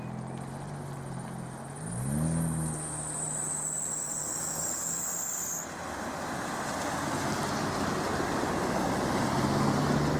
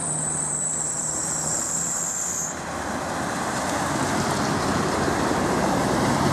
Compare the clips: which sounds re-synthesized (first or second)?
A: second